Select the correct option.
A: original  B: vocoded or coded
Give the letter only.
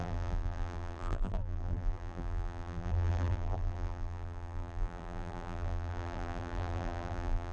B